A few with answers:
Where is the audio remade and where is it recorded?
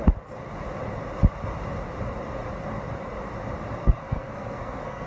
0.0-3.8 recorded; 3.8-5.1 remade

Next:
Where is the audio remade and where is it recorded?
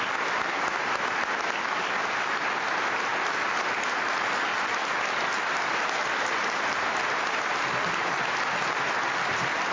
0.0-4.8 recorded; 4.8-7.2 remade; 7.2-9.7 recorded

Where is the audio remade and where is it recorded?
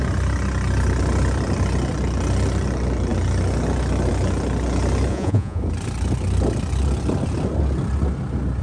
0.0-5.1 recorded; 5.1-5.6 remade; 5.6-8.6 recorded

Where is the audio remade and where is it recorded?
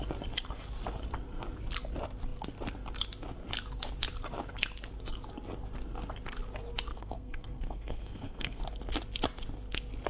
0.0-6.9 recorded; 6.9-8.6 remade; 8.6-10.1 recorded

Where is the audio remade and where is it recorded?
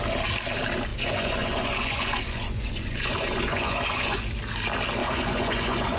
0.0-0.9 recorded; 0.9-4.2 remade; 4.2-5.0 recorded; 5.0-6.0 remade